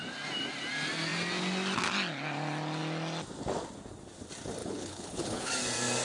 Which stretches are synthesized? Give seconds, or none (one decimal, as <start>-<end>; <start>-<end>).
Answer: 4.6-5.5

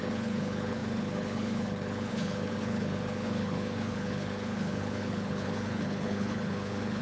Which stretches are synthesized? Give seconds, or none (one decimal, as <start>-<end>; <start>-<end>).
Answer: 0.0-7.0